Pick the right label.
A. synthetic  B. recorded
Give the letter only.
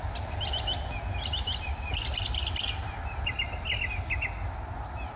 B